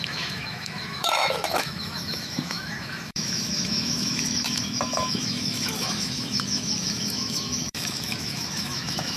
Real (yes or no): no